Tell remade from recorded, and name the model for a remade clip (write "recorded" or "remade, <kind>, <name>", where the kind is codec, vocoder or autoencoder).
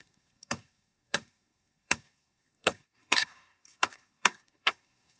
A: remade, codec, SNAC